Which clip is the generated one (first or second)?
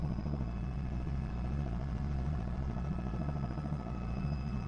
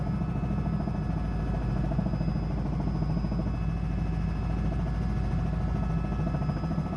first